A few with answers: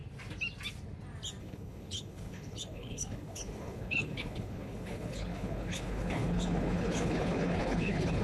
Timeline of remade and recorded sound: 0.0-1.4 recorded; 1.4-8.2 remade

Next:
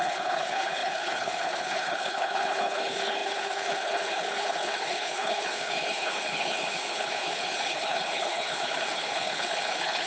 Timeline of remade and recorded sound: 0.0-10.1 remade